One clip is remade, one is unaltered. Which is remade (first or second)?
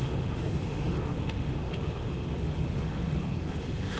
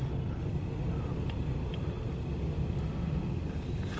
first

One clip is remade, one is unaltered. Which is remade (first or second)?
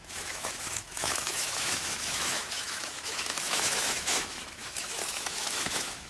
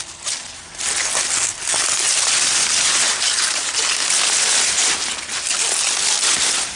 first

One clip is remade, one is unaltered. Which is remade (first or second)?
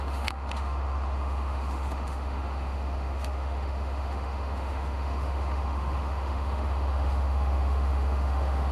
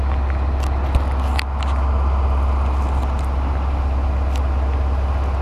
first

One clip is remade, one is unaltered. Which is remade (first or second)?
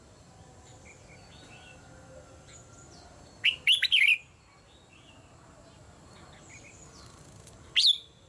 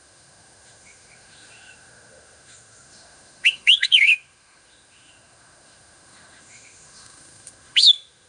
second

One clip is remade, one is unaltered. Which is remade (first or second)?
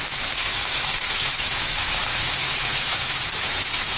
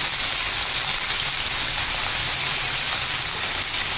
first